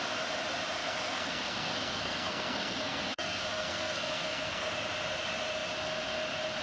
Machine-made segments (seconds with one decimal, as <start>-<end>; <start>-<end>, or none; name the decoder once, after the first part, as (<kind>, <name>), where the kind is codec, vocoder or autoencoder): 0.8-4.7 (codec, SNAC)